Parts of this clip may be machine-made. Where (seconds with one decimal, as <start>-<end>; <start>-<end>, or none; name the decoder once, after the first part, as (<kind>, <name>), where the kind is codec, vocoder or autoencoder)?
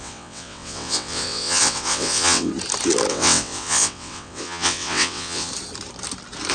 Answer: 0.0-2.5 (vocoder, WaveNeXt); 3.1-5.5